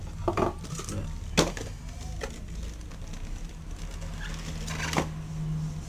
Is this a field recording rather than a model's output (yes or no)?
yes